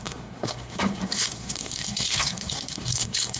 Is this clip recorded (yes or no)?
no